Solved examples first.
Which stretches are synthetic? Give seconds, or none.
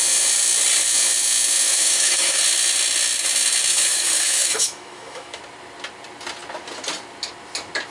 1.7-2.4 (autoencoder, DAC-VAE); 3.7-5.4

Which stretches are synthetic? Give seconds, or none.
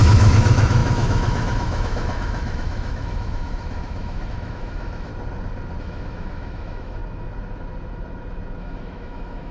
0.0-5.1 (autoencoder, DAC-VAE); 5.8-7.0; 8.6-9.5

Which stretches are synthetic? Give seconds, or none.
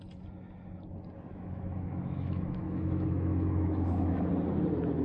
1.3-4.3 (autoencoder, DAC-VAE)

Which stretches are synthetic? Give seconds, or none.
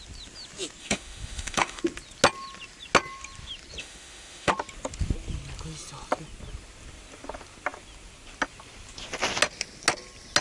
0.8-1.8 (autoencoder, DAC-VAE); 3.8-4.5